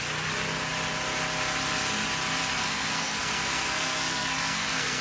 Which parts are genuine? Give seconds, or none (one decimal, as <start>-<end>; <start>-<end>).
0.0-2.5